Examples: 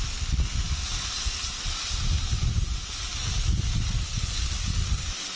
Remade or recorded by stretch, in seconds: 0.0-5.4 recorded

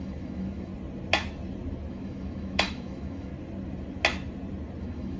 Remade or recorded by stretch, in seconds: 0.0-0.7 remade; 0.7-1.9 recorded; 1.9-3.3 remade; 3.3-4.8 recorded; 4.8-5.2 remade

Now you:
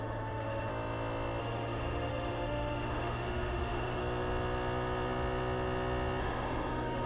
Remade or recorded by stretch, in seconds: 0.0-0.7 remade; 0.7-1.4 recorded; 1.4-4.0 remade; 4.0-6.2 recorded; 6.2-7.1 remade

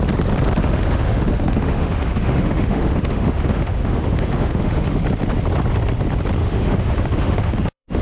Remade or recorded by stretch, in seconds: 0.0-0.6 recorded; 0.6-5.0 remade; 5.0-6.4 recorded; 6.4-8.0 remade

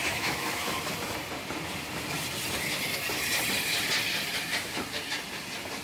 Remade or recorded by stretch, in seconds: 0.0-0.9 remade; 0.9-5.8 recorded

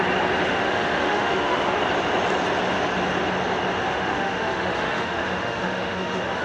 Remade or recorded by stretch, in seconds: 0.0-0.5 recorded; 0.5-1.8 remade; 1.8-3.9 recorded; 3.9-6.4 remade

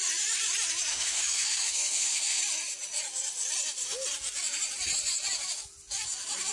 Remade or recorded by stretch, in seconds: 0.0-0.9 recorded; 0.9-2.4 remade; 2.4-6.5 recorded

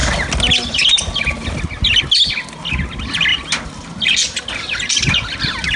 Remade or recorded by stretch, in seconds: 0.0-5.8 recorded